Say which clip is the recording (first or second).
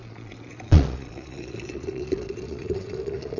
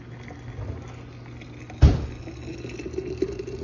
second